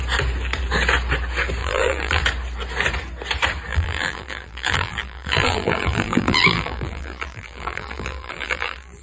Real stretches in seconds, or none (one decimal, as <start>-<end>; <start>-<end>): 0.0-1.6; 2.2-3.7